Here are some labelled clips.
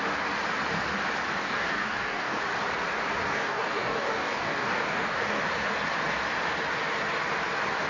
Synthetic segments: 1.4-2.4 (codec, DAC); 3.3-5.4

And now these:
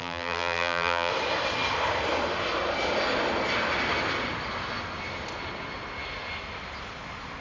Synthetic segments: 0.0-1.1 (vocoder, BigVGAN v2)

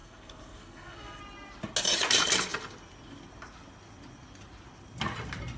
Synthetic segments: 0.0-1.2 (codec, SNAC)

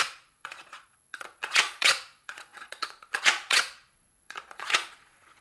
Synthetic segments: 0.0-5.4 (vocoder, Vocos)

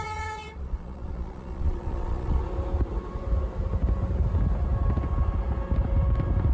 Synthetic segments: 0.0-2.4 (vocoder, Vocos)

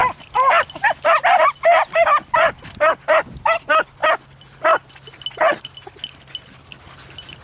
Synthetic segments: none